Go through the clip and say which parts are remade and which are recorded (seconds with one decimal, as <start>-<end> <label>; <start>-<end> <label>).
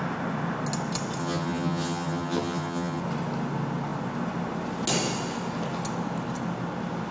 0.0-1.2 recorded; 1.2-3.0 remade; 3.0-7.1 recorded